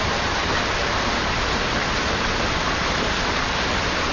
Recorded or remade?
recorded